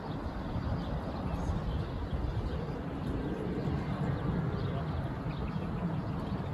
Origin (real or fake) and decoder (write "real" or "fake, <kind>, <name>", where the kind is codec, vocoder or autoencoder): real